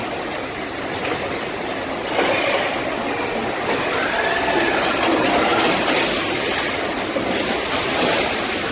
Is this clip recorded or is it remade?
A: recorded